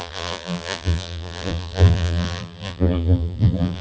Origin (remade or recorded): remade